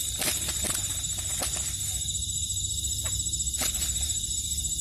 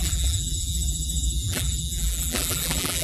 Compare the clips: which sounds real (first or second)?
first